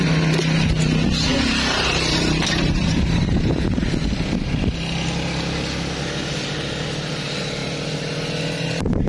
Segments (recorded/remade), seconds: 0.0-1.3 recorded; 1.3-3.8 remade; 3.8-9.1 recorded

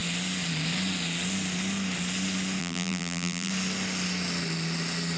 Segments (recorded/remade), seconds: 0.0-2.6 recorded; 2.6-3.5 remade; 3.5-5.2 recorded

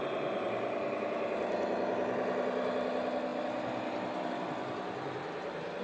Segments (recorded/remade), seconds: 0.0-5.8 recorded

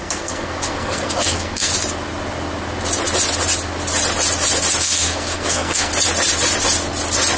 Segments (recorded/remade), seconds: 0.0-1.7 remade; 1.7-4.8 recorded; 4.8-5.9 remade; 5.9-7.4 recorded

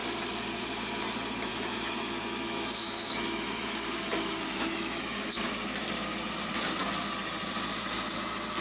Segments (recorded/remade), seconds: 0.0-1.5 recorded; 1.5-5.5 remade; 5.5-8.6 recorded

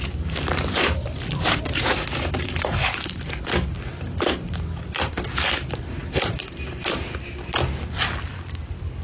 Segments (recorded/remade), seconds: 0.0-2.8 remade; 2.8-4.8 recorded; 4.8-9.0 remade